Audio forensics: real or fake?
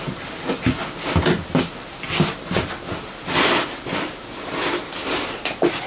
real